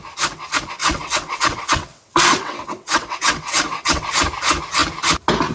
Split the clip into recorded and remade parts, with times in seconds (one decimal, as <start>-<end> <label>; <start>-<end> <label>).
0.0-0.8 recorded; 0.8-4.1 remade; 4.1-5.5 recorded